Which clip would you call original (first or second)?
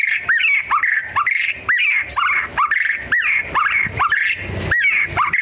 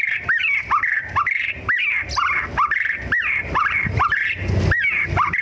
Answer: first